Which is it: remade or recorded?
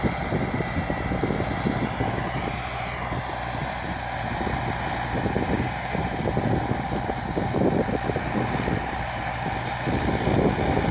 recorded